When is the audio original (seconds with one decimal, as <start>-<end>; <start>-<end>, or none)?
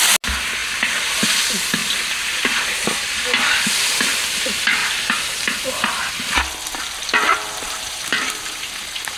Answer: 0.0-4.8; 6.1-7.3